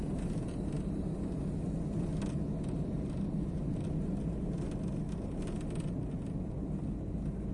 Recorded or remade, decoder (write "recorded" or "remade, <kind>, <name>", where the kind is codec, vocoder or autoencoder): recorded